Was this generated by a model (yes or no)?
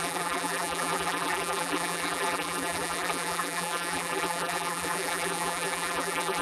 yes